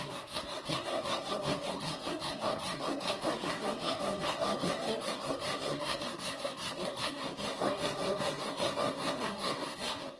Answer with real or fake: fake